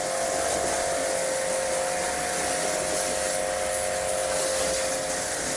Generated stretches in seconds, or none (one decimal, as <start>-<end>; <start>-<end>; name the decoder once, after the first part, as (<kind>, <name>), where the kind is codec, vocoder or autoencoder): none